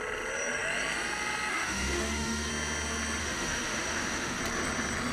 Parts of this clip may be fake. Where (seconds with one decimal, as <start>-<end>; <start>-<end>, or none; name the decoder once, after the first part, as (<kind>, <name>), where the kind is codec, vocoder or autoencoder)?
1.5-2.5 (autoencoder, DAC-VAE); 3.2-4.4